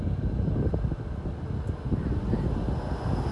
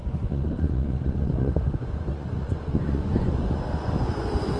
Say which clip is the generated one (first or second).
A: second